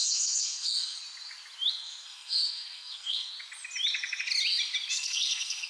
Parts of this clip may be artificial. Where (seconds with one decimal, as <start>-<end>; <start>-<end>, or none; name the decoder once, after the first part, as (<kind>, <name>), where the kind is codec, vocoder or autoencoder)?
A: 0.0-1.0 (codec, SNAC); 1.7-3.3; 4.9-5.7